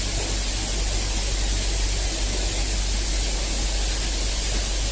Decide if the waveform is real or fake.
real